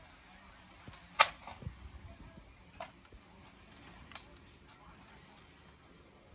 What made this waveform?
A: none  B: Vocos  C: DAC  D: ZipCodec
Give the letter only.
A